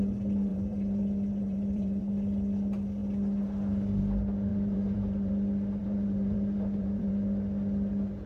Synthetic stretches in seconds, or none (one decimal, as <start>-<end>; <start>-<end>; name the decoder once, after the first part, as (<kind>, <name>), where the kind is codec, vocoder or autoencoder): 0.5-2.1 (vocoder, BigVGAN v2); 4.5-5.3; 5.8-7.1